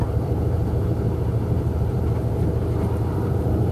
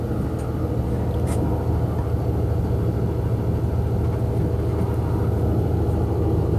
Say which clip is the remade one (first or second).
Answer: first